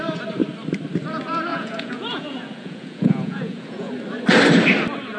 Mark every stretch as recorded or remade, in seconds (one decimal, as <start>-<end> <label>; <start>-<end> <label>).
0.0-1.5 recorded; 1.5-3.9 remade; 3.9-5.2 recorded